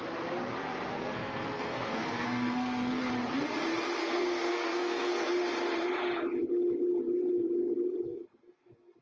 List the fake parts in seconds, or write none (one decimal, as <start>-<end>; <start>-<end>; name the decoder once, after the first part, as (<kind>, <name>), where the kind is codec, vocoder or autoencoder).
0.9-3.1 (codec, SNAC); 4.0-5.3; 8.1-9.0